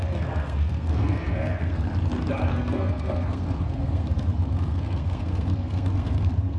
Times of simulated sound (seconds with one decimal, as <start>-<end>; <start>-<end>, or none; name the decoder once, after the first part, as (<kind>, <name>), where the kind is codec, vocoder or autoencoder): 0.0-1.9 (codec, SNAC); 2.5-6.6